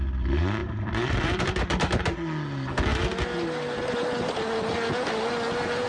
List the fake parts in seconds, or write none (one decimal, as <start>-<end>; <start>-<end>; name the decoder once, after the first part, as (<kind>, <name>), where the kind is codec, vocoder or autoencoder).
0.6-1.6 (vocoder, BigVGAN v2)